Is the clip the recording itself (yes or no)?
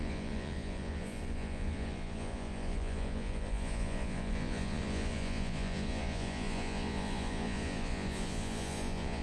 no